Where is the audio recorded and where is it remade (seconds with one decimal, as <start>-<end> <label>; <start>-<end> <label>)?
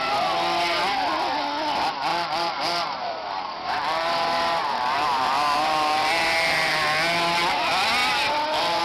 0.0-2.1 recorded; 2.1-6.8 remade; 6.8-8.8 recorded